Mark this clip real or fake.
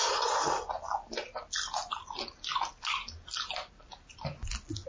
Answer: real